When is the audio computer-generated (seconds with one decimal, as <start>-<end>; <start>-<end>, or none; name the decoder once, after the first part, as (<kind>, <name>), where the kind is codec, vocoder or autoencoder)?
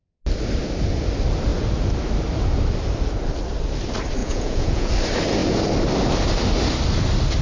4.2-4.9 (vocoder, Vocos)